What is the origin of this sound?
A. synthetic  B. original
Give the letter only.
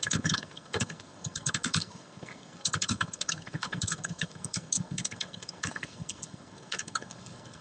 A